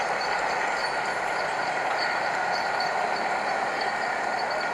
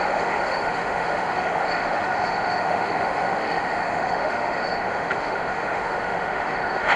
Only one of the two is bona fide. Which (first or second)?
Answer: first